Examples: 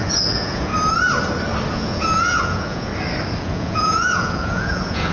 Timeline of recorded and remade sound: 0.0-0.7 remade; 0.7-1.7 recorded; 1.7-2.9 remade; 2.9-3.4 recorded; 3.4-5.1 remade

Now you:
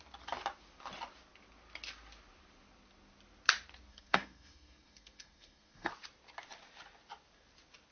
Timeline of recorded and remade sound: 0.0-3.9 recorded; 3.9-5.9 remade; 5.9-7.9 recorded

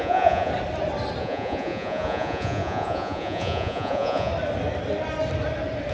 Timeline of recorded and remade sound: 0.0-0.5 remade; 0.5-1.2 recorded; 1.2-4.3 remade; 4.3-5.9 recorded

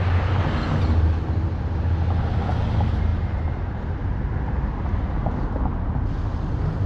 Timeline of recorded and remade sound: 0.0-6.9 recorded

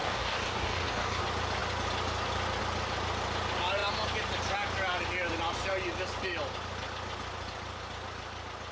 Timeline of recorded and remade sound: 0.0-1.2 remade; 1.2-8.7 recorded

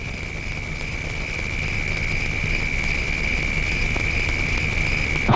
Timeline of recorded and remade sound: 0.0-5.4 recorded

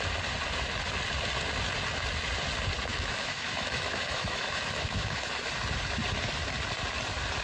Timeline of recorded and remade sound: 0.0-2.9 recorded; 2.9-5.3 remade; 5.3-7.4 recorded

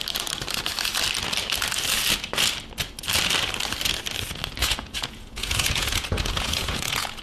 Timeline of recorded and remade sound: 0.0-4.6 recorded; 4.6-7.2 remade